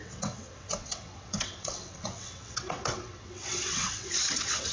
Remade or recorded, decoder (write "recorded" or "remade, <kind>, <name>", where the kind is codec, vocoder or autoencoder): remade, vocoder, WaveNeXt